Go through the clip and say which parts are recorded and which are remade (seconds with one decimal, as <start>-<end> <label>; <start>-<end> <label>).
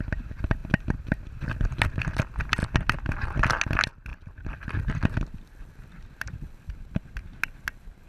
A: 0.0-8.1 recorded